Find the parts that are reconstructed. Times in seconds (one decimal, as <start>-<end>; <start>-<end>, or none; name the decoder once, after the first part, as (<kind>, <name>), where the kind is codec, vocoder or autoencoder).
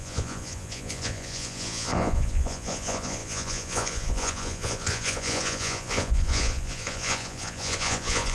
0.0-8.3 (vocoder, Vocos)